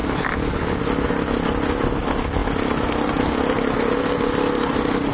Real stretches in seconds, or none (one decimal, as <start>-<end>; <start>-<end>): 0.8-5.1